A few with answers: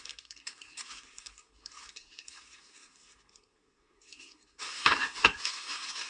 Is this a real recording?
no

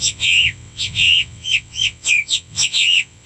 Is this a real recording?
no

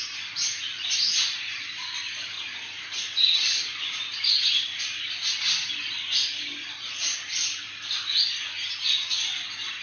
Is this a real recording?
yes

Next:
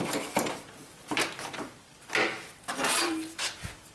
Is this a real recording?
yes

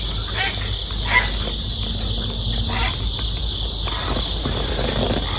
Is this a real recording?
yes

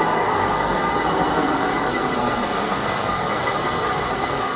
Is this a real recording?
no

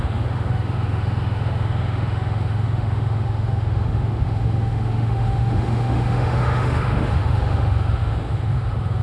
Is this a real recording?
no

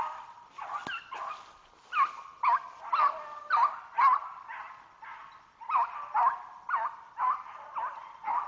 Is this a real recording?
yes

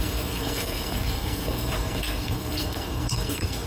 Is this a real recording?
no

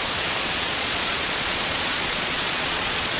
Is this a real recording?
no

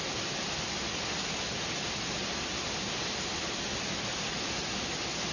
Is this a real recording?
yes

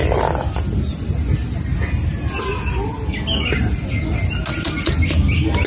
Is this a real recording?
yes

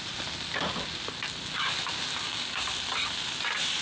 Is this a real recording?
yes